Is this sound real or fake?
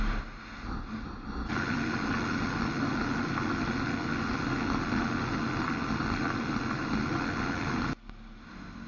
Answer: real